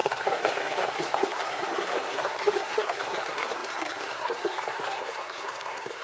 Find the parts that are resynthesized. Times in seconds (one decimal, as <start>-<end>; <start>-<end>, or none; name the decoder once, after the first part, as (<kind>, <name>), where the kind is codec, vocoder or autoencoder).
0.0-6.0 (codec, SNAC)